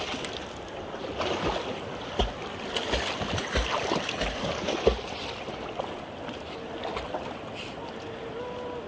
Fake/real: real